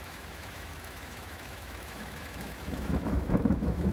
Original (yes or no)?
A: no